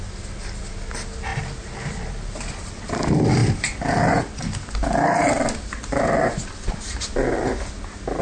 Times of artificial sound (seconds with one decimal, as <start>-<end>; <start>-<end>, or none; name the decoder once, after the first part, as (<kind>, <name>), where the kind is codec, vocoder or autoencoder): 1.3-2.9 (vocoder, BigVGAN v2)